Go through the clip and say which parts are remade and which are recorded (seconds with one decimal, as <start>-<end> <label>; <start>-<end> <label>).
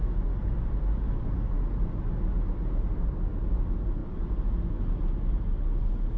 0.0-4.0 recorded; 4.0-4.6 remade; 4.6-6.2 recorded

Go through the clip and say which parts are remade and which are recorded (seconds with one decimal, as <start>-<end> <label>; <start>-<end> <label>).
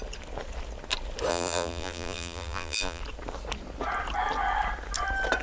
0.0-1.3 recorded; 1.3-3.0 remade; 3.0-5.4 recorded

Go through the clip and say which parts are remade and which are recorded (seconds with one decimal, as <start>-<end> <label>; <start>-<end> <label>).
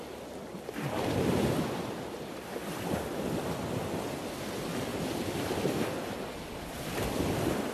0.0-0.5 recorded; 0.5-3.3 remade; 3.3-4.9 recorded; 4.9-5.7 remade; 5.7-7.7 recorded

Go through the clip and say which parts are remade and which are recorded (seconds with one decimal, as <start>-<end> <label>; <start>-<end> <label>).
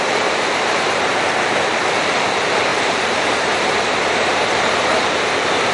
0.0-1.1 remade; 1.1-2.1 recorded; 2.1-5.7 remade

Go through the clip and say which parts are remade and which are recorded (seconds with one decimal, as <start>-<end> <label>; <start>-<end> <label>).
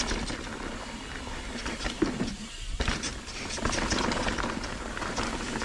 0.0-5.6 recorded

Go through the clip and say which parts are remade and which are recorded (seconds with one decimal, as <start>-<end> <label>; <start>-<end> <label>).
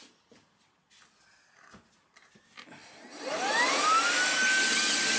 0.0-5.2 recorded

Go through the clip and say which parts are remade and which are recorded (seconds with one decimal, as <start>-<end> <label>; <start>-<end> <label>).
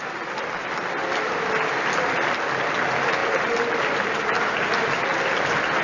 0.0-3.2 recorded; 3.2-5.1 remade; 5.1-5.8 recorded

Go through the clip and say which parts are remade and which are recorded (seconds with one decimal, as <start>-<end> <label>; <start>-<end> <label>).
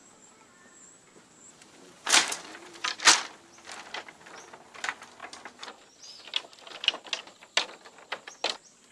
0.0-3.0 remade; 3.0-8.9 recorded